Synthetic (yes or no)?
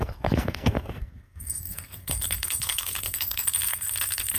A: yes